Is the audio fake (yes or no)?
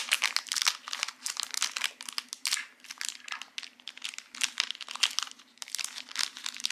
no